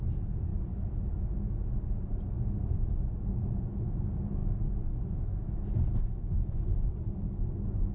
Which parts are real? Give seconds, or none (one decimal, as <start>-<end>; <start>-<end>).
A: 0.0-0.5; 1.1-7.9